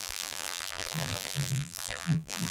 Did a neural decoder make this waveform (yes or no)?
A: yes